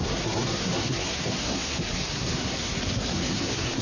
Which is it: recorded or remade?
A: remade